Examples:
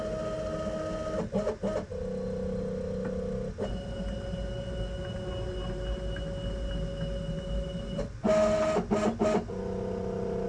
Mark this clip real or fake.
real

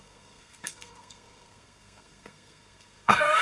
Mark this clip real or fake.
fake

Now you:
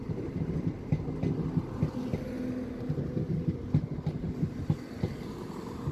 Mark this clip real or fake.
real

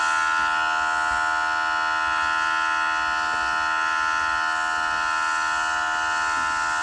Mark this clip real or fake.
real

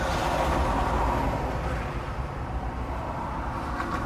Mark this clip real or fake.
real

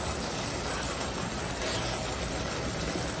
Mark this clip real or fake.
real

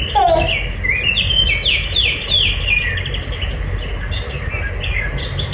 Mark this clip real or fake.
real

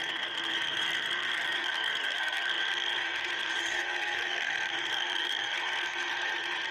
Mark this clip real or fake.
fake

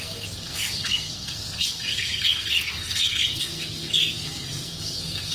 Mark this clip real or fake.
fake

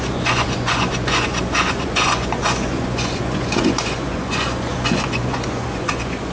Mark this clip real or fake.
fake